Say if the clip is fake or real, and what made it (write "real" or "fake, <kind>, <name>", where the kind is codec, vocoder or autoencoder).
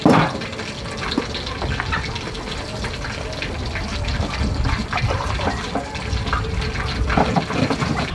real